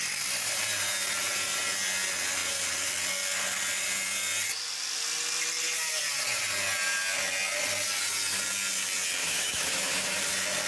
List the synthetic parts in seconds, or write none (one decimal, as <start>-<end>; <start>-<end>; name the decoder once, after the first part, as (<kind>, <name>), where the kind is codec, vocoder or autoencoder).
9.2-10.2 (autoencoder, DAC-VAE)